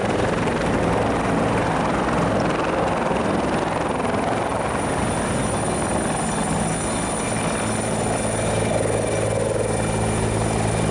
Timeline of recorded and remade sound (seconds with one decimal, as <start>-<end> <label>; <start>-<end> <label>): 0.0-0.7 remade; 0.7-10.9 recorded

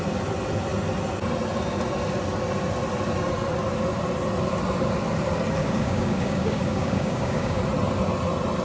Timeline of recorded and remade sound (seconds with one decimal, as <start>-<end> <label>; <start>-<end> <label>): 0.0-5.6 recorded; 5.6-7.6 remade; 7.6-8.6 recorded

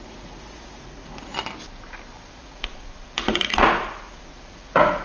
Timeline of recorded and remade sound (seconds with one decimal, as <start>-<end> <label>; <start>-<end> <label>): 0.0-1.3 remade; 1.3-2.4 recorded; 2.4-5.0 remade

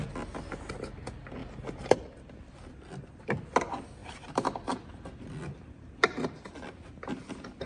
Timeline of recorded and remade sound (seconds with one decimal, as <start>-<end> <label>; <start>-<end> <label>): 0.0-1.4 recorded; 1.4-2.7 remade; 2.7-7.7 recorded